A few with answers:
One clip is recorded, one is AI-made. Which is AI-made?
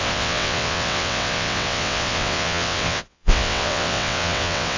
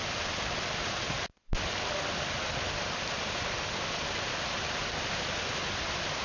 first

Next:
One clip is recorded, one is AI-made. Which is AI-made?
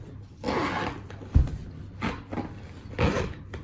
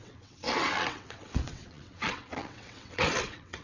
second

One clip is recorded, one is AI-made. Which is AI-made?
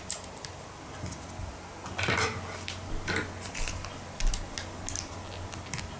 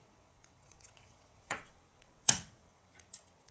second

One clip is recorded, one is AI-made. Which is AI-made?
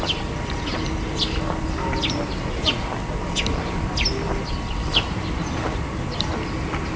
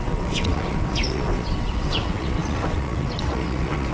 second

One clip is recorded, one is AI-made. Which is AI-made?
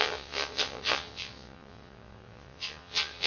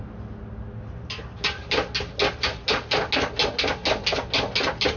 first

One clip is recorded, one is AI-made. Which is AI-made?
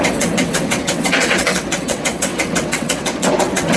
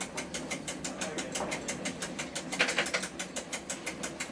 first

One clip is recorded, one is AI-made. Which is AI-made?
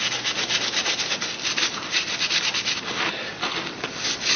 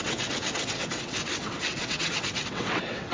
second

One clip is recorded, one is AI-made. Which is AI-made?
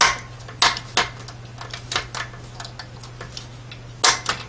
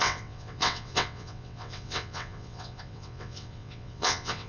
second